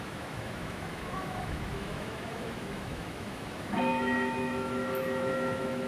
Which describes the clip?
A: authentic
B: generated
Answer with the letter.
B